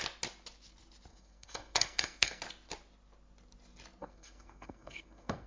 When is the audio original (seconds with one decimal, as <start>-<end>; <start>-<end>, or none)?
0.0-1.1; 2.4-4.0